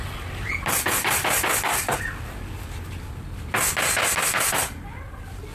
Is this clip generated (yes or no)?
no